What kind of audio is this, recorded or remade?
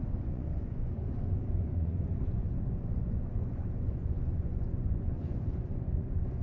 remade